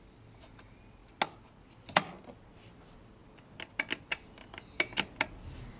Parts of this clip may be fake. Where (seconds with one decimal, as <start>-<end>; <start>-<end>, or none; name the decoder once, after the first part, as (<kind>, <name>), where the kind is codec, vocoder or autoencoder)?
none

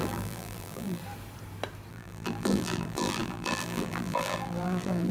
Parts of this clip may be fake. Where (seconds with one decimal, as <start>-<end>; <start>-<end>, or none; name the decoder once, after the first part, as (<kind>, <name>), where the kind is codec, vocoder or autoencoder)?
0.0-1.0 (vocoder, BigVGAN v2); 1.9-5.1

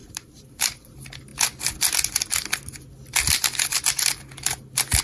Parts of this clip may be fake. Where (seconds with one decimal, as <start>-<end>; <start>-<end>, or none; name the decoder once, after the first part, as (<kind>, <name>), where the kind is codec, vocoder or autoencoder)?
0.0-0.9 (vocoder, BigVGAN v2)

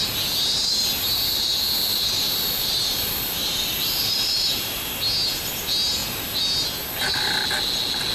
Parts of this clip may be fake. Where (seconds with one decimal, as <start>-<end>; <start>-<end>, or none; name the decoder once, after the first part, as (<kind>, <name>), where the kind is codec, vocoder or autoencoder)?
1.9-4.9 (vocoder, BigVGAN v2)

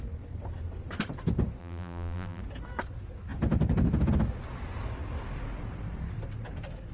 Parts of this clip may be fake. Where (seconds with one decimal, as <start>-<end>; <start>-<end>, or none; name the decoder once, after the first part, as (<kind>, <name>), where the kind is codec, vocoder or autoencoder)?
1.6-2.4 (vocoder, BigVGAN v2)

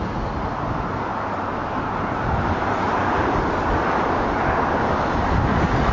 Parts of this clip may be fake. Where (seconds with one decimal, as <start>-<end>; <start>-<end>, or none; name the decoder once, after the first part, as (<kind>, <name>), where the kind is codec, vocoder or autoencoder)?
1.1-2.8 (vocoder, BigVGAN v2)

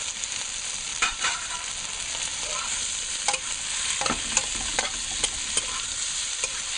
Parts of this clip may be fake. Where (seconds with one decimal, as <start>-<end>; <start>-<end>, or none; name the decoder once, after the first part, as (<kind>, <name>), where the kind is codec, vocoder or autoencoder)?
0.9-1.5 (vocoder, BigVGAN v2)